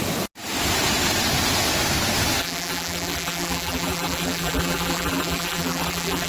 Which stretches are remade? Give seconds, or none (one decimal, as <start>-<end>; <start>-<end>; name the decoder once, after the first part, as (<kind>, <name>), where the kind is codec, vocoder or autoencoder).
2.4-6.3 (vocoder, BigVGAN v2)